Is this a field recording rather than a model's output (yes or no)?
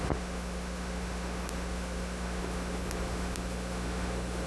no